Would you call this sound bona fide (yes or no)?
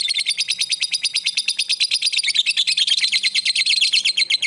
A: yes